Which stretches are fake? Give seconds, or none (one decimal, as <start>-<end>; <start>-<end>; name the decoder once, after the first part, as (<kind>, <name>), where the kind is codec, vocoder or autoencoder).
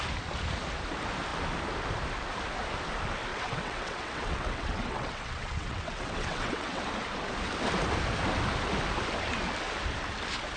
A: 3.3-6.8 (vocoder, WaveNeXt)